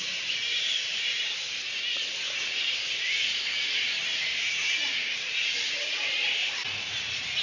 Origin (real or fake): fake